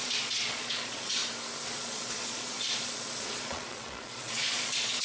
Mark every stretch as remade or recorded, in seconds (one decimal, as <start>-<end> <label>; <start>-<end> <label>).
0.0-1.2 remade; 1.2-1.7 recorded; 1.7-5.0 remade